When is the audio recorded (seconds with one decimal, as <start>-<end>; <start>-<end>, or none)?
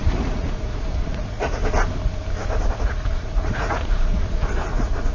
1.6-2.6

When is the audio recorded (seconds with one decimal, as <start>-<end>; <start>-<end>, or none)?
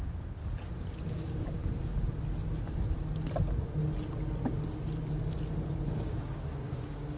0.4-1.1; 1.6-5.9